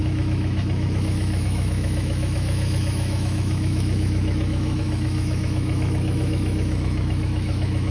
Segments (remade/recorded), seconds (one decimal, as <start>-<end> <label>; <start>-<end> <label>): 0.0-7.9 remade